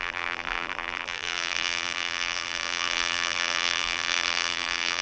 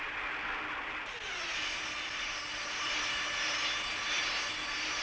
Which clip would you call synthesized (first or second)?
first